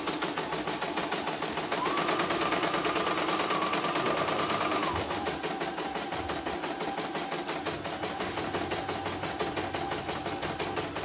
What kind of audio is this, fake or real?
real